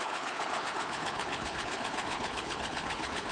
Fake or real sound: fake